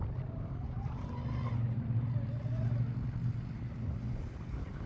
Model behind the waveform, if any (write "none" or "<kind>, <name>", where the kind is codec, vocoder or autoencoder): none